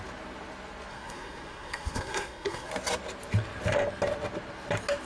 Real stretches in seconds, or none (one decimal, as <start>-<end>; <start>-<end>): 0.0-0.9; 2.7-5.1